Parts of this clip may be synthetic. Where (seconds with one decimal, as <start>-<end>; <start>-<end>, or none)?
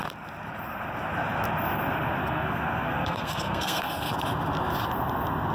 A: 2.2-4.1